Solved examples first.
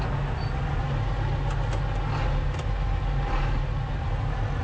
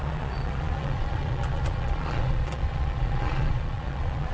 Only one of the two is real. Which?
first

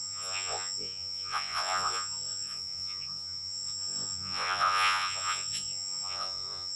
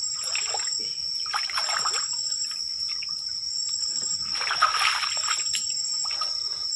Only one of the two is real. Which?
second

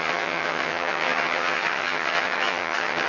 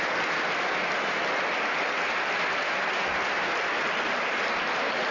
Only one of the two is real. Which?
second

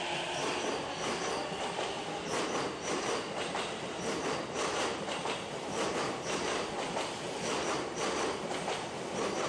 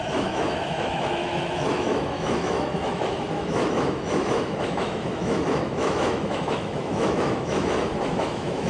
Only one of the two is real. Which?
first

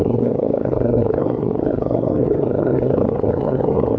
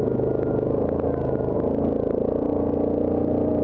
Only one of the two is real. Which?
second